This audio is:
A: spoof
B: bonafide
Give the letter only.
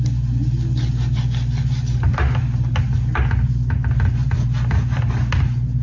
B